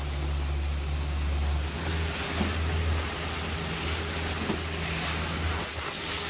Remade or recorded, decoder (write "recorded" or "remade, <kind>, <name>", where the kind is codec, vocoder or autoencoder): recorded